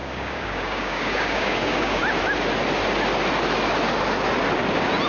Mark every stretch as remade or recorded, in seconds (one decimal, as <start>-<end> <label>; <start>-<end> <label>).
0.0-2.0 remade; 2.0-5.1 recorded